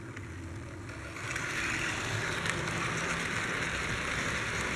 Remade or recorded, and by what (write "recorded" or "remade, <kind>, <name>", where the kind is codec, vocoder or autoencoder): recorded